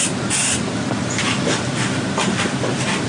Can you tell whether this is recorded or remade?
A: recorded